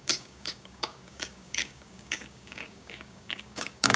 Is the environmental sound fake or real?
fake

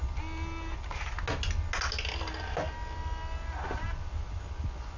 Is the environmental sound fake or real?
real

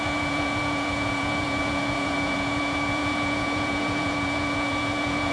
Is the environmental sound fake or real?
fake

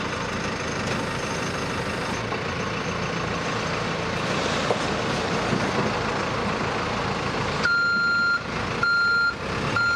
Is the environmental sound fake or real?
real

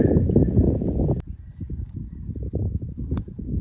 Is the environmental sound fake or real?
real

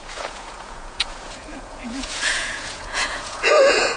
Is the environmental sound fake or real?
fake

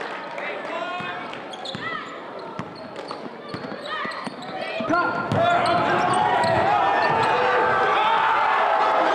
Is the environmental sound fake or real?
real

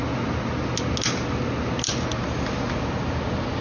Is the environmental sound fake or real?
real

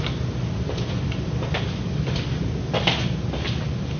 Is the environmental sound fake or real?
real